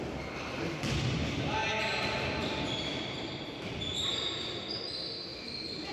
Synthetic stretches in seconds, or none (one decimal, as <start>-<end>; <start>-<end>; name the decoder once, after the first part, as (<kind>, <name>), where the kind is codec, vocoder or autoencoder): none